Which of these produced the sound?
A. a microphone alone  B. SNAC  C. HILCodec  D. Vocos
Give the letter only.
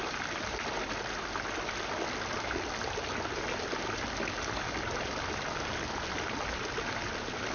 A